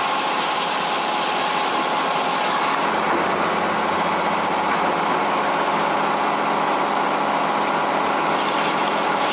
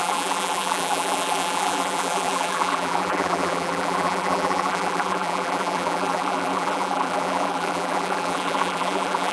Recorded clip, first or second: first